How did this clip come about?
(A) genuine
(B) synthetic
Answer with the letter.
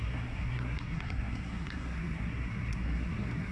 B